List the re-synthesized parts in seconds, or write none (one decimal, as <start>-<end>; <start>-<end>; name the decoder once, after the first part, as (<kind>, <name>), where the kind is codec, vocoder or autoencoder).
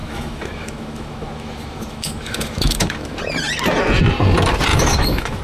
0.0-3.2 (autoencoder, DAC-VAE); 4.7-5.4